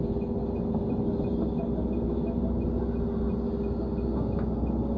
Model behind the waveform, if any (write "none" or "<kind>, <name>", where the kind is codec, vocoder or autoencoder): none